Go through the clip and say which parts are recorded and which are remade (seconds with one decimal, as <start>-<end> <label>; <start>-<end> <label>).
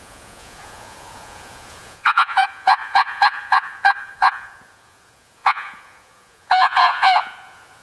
0.0-7.8 remade